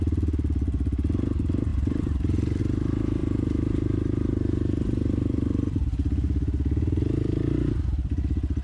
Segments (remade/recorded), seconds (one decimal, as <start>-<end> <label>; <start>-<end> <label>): 0.0-1.7 recorded; 1.7-2.6 remade; 2.6-3.2 recorded; 3.2-7.7 remade; 7.7-8.6 recorded